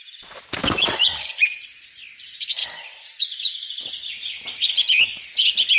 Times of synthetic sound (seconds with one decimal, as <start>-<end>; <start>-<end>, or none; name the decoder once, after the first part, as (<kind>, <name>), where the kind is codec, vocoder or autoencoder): 0.6-1.6 (vocoder, BigVGAN v2)

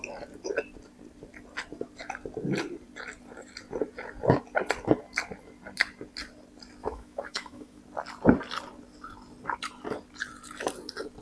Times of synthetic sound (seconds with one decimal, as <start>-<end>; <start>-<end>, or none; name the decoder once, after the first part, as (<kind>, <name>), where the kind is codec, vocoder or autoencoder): 6.8-7.8 (autoencoder, DAC-VAE)

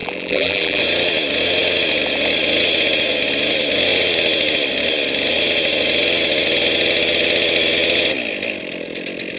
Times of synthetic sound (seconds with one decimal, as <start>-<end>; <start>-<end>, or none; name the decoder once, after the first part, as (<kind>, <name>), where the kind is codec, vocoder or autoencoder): 0.0-0.8 (vocoder, BigVGAN v2)

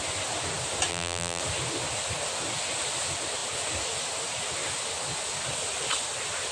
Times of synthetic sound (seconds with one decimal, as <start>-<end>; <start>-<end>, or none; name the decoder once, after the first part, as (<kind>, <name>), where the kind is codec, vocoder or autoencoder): 0.9-1.4 (vocoder, BigVGAN v2)

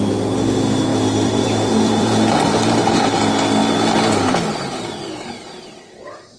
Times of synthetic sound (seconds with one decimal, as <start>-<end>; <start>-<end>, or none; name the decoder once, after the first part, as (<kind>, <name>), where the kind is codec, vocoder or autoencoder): 0.9-3.2 (vocoder, BigVGAN v2); 3.6-5.8

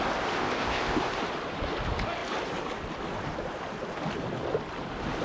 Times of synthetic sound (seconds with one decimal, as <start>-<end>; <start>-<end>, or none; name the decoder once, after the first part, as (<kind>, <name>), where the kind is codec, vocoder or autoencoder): 0.4-1.0 (codec, ZipCodec)

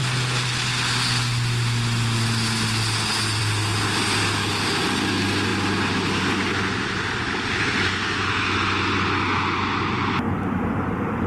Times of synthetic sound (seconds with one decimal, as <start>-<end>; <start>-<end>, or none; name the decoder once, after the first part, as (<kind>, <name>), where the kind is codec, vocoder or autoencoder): none

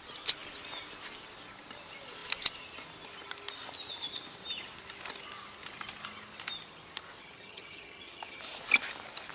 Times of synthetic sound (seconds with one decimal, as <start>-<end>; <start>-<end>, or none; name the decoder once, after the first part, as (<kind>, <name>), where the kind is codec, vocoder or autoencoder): 7.2-8.4 (vocoder, HiFi-GAN)